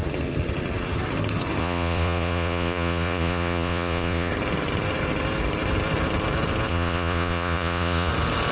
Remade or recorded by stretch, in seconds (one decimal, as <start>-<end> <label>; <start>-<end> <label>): 0.0-1.6 recorded; 1.6-4.3 remade; 4.3-6.7 recorded; 6.7-8.1 remade; 8.1-8.5 recorded